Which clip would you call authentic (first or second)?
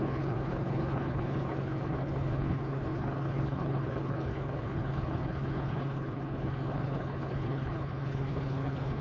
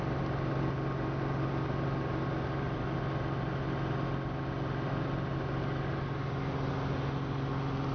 second